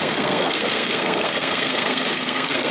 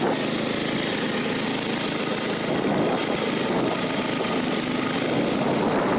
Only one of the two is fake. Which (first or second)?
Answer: first